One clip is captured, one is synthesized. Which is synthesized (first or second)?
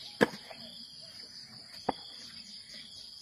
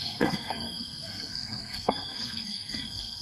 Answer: second